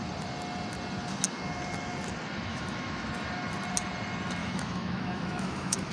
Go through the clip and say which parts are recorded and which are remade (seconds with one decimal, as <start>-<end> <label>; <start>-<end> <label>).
0.0-2.5 recorded; 2.5-3.1 remade; 3.1-4.4 recorded; 4.4-5.9 remade